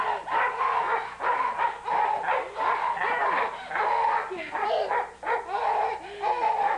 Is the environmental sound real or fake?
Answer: real